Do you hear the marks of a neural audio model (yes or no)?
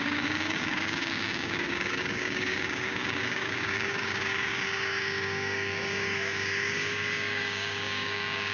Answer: yes